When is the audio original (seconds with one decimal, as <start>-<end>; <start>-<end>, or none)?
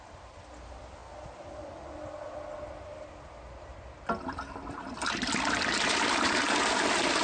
0.0-7.2